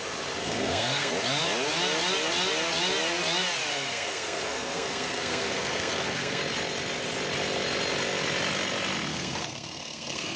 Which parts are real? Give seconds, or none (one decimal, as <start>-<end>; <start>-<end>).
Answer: 0.0-0.4; 1.1-3.7; 6.4-9.1